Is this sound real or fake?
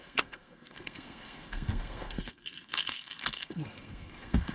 fake